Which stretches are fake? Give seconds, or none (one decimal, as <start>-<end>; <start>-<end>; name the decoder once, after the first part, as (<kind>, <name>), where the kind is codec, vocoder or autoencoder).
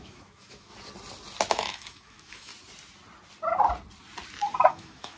0.0-0.7 (autoencoder, DAC-VAE); 1.5-2.5; 4.7-5.2